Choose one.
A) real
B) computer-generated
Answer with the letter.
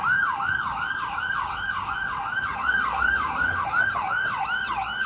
B